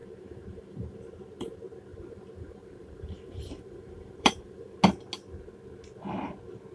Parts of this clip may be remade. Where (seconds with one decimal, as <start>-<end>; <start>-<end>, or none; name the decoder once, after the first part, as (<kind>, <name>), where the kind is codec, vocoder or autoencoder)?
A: 0.0-1.0 (vocoder, BigVGAN v2); 1.9-4.8